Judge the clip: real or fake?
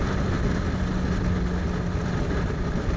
real